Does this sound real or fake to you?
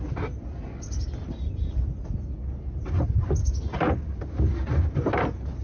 real